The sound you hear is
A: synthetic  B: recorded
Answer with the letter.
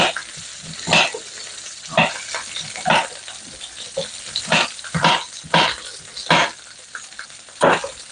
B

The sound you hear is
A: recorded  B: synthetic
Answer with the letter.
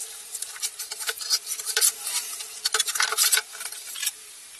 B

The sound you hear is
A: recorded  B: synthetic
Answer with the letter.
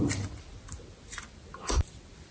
A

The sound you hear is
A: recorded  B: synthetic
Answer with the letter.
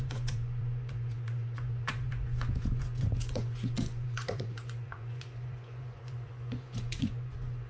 B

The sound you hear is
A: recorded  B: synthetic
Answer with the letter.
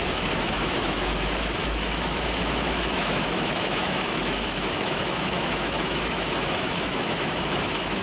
B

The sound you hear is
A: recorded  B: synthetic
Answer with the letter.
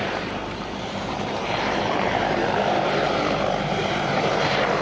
B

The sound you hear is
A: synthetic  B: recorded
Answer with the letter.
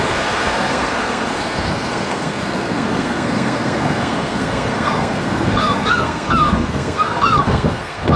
A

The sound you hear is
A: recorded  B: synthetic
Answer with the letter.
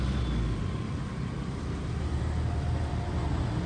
A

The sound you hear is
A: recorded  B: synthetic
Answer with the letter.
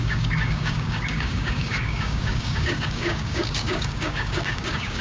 B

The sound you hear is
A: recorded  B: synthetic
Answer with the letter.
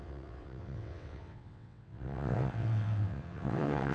B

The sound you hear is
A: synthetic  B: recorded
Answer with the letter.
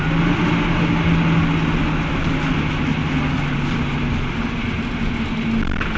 B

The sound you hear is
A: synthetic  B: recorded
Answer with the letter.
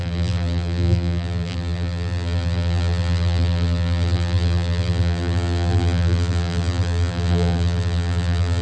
A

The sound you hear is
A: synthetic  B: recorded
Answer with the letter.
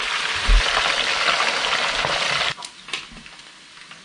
B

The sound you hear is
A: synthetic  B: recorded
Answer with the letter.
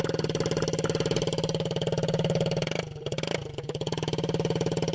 B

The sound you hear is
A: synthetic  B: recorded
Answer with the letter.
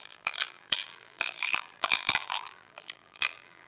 A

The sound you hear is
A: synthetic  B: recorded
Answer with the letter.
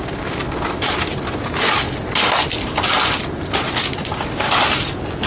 B